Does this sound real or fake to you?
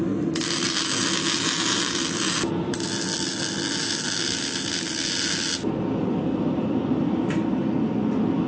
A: real